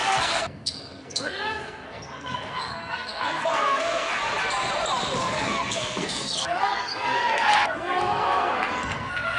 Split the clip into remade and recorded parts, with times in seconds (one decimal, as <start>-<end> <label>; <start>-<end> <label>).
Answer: 0.0-4.2 remade; 4.2-5.2 recorded; 5.2-9.4 remade